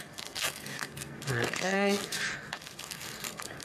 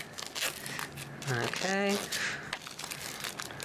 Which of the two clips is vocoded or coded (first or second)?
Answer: first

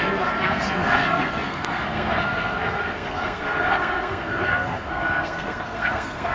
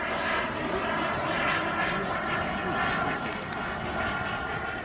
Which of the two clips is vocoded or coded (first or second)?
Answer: first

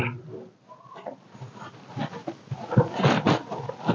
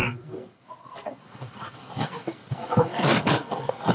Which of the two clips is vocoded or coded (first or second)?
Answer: second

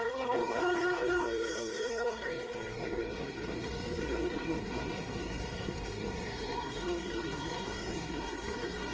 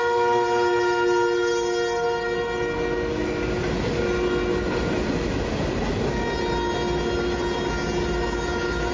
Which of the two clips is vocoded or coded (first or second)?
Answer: first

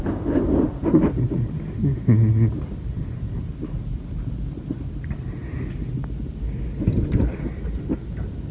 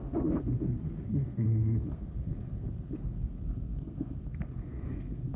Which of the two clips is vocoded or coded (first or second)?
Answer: second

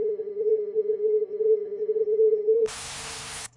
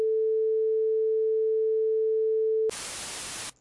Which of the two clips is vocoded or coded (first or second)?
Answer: first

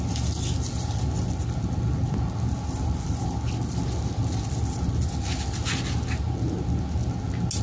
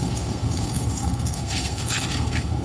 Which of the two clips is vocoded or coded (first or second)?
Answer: second